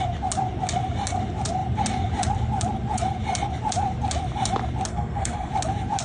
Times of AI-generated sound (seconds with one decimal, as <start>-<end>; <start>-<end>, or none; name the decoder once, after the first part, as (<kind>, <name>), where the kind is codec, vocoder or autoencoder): 4.9-5.5 (codec, SNAC)

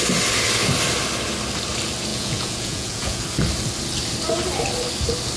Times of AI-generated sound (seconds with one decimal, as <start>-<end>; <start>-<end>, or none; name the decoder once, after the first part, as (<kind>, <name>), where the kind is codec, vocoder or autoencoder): 2.1-3.2 (vocoder, Vocos)

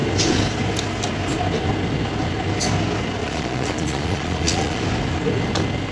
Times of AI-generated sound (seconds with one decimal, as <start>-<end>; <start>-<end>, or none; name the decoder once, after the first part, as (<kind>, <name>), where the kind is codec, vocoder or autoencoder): 3.2-4.8 (vocoder, Vocos)

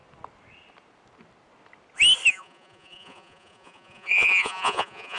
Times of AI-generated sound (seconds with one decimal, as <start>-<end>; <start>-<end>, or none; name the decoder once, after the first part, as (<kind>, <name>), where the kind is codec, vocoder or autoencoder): 2.3-5.2 (vocoder, Vocos)

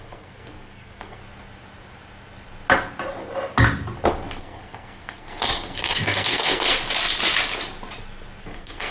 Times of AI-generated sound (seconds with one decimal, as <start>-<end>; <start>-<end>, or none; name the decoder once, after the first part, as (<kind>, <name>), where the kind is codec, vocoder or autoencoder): 0.0-1.2 (codec, SNAC); 4.4-6.8; 8.4-8.9

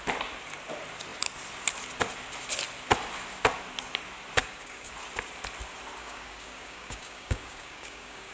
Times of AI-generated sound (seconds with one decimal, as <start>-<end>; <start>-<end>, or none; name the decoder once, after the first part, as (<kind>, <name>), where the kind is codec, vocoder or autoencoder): 4.4-4.9 (codec, DAC); 6.0-8.3

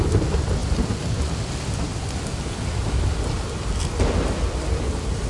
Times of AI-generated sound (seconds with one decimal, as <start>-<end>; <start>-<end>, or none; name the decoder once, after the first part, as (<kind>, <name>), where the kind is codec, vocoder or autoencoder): none